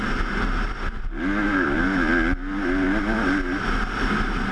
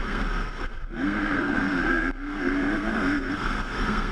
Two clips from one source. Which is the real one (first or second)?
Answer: first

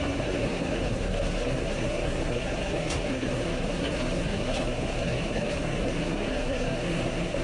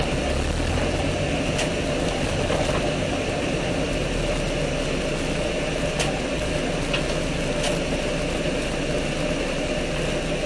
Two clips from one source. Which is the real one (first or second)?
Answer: second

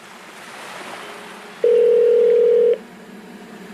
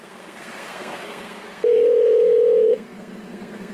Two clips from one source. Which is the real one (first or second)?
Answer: first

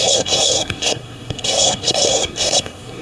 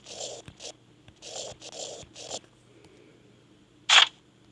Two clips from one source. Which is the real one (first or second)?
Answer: second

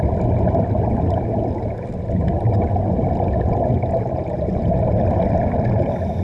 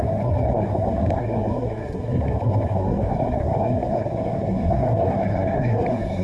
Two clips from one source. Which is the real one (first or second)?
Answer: first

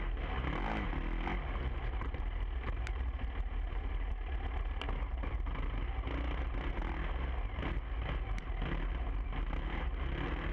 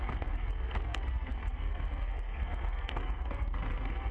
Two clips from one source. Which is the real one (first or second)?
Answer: first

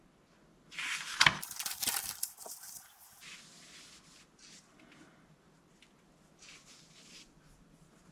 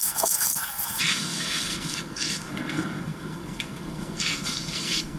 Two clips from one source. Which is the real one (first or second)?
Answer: first